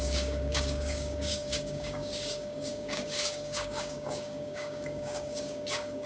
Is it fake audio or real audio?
fake